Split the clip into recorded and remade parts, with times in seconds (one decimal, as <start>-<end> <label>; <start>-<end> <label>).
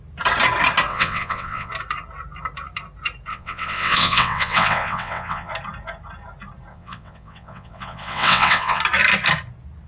0.0-0.9 recorded; 0.9-1.7 remade; 1.7-3.3 recorded; 3.3-5.5 remade; 5.5-6.7 recorded; 6.7-8.8 remade; 8.8-9.9 recorded